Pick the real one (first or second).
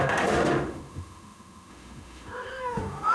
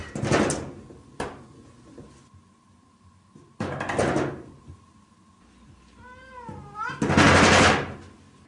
second